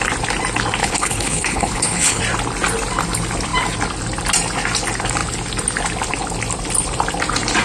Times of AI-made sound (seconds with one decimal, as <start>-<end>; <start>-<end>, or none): 0.8-2.2